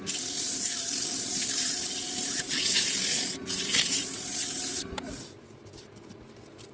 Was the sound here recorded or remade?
remade